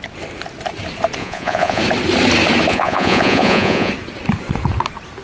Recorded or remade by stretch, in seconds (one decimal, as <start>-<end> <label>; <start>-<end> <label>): 0.0-1.2 recorded; 1.2-1.8 remade; 1.8-2.7 recorded; 2.7-3.9 remade; 3.9-5.2 recorded